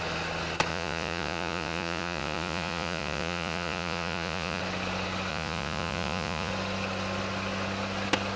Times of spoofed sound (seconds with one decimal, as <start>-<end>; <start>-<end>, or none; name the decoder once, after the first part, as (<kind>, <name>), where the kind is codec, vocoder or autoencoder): 0.7-4.6 (vocoder, Vocos); 5.3-6.5